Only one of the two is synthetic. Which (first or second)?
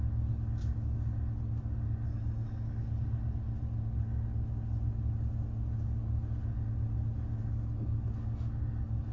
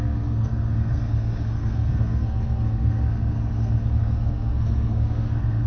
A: second